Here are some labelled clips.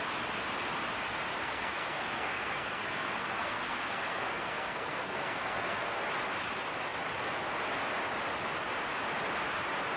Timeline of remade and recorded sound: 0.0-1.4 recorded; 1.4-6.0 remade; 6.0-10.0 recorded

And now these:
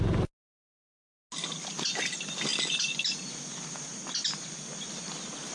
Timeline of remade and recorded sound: 0.0-5.5 recorded

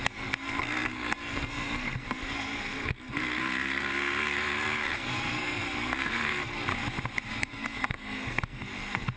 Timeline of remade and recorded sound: 0.0-6.7 remade; 6.7-7.3 recorded; 7.3-9.2 remade

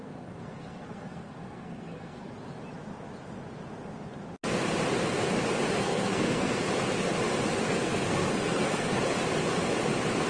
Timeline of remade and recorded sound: 0.0-2.3 remade; 2.3-5.8 recorded; 5.8-6.6 remade; 6.6-7.7 recorded; 7.7-9.0 remade; 9.0-10.3 recorded

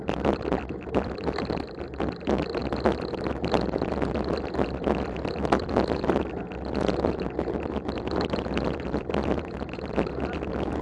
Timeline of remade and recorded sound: 0.0-10.8 recorded

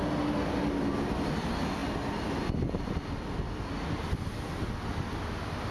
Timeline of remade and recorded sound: 0.0-5.7 recorded

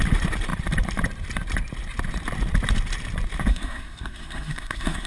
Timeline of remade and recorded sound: 0.0-3.5 recorded; 3.5-5.1 remade

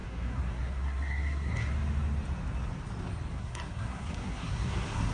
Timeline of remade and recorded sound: 0.0-1.7 remade; 1.7-3.3 recorded; 3.3-5.1 remade